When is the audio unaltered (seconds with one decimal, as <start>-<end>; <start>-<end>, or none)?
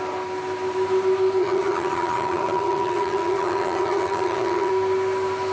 0.0-1.4; 4.7-5.5